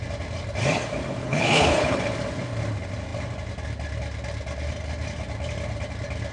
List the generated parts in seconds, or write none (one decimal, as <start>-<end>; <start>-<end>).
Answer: 1.2-2.0